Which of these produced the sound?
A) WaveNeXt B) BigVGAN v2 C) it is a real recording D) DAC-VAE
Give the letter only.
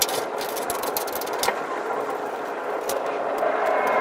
C